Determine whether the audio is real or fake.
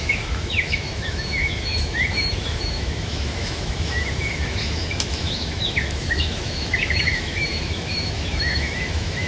fake